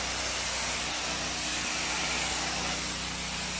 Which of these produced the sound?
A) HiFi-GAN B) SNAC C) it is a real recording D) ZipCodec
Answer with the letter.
C